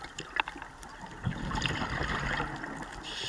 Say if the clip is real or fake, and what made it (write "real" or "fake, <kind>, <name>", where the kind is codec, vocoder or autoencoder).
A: real